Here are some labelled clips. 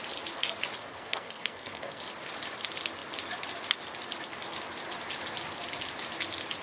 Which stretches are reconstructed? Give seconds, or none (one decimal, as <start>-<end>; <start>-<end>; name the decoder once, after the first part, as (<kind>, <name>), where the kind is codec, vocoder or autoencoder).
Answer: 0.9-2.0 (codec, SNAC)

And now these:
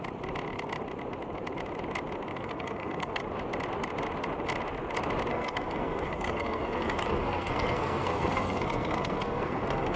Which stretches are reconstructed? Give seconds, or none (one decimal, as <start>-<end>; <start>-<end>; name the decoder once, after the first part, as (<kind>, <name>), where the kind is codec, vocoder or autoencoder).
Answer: 2.3-3.2 (codec, SNAC); 5.3-10.0

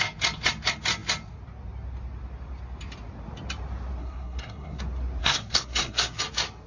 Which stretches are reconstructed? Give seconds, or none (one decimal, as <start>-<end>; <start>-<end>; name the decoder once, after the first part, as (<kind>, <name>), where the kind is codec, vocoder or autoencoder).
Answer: 4.0-4.8 (codec, SNAC); 5.2-6.2